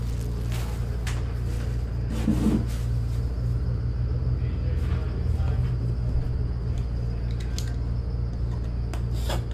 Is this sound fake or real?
real